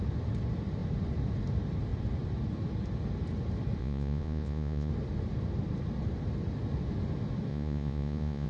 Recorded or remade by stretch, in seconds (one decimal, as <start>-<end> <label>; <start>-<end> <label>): 0.0-3.8 recorded; 3.8-4.9 remade; 4.9-7.5 recorded; 7.5-8.5 remade